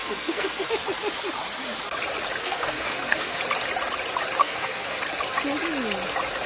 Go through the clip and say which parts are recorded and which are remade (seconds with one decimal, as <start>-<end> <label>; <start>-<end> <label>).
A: 0.0-0.7 remade; 0.7-2.4 recorded; 2.4-3.4 remade; 3.4-4.4 recorded; 4.4-5.0 remade; 5.0-6.5 recorded